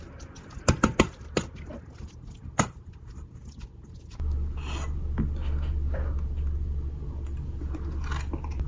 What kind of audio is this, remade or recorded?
recorded